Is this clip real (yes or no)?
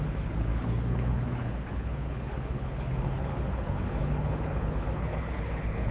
no